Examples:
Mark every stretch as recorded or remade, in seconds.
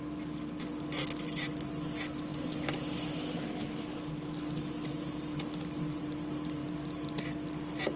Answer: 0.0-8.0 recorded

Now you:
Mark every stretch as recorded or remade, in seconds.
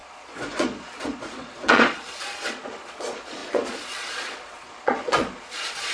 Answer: 0.0-5.9 remade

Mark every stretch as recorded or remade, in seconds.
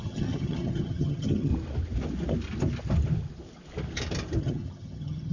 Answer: 0.0-1.5 remade; 1.5-4.4 recorded; 4.4-5.3 remade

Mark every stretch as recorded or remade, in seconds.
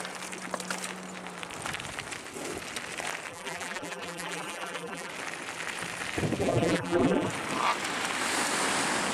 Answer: 0.0-3.3 recorded; 3.3-5.1 remade; 5.1-6.4 recorded; 6.4-7.3 remade; 7.3-9.1 recorded